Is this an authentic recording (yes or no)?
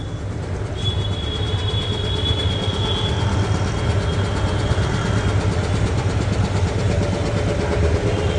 yes